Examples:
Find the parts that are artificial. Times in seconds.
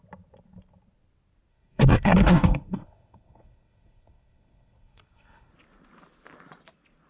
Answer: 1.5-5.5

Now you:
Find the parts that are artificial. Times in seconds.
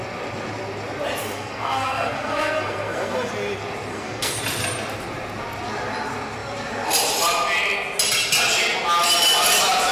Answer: 1.2-3.3; 3.9-4.4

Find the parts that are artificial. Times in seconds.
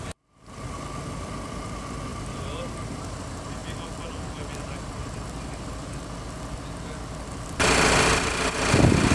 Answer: none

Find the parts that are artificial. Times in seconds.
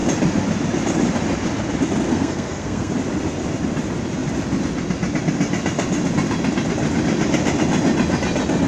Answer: 2.1-2.9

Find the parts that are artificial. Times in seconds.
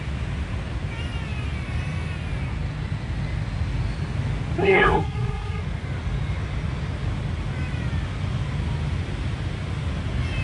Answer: 4.6-5.6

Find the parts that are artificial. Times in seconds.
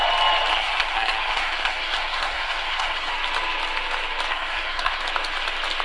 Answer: 0.5-3.1; 4.3-5.0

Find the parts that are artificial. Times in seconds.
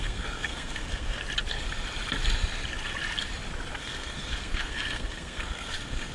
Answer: 0.0-1.2; 3.8-6.1